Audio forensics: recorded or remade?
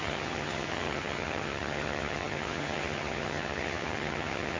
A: remade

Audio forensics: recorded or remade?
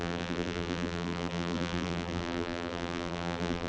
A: remade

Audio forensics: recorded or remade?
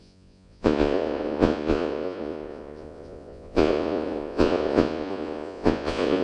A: remade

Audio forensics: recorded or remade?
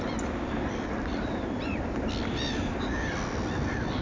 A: recorded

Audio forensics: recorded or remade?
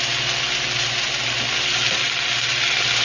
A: recorded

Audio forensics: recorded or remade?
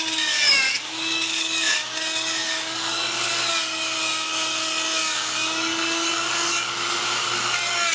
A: remade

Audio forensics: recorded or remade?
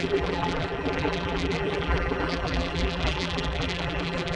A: remade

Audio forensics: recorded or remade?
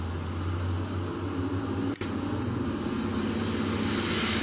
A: recorded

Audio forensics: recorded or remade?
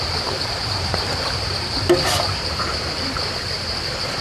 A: remade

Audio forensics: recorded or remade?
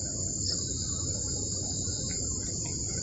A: recorded